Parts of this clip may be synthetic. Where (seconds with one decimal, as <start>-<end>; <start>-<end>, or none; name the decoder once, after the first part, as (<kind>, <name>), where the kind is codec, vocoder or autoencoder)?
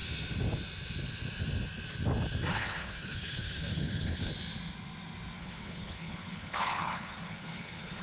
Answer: 2.5-4.3 (codec, HILCodec); 5.4-8.0